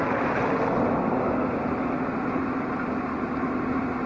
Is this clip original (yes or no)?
yes